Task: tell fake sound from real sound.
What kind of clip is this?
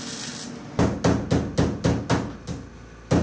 real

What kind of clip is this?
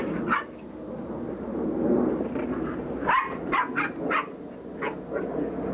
real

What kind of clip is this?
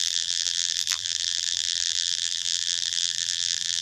fake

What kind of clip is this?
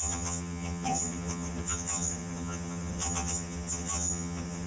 fake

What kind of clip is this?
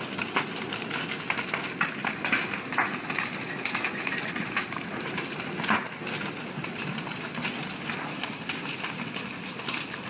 real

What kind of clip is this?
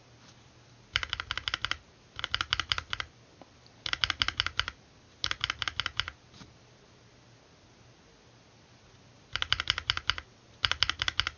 real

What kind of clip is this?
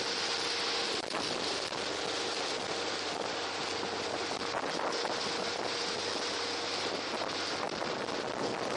real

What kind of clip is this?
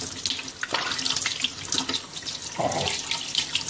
real